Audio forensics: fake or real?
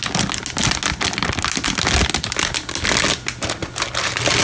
real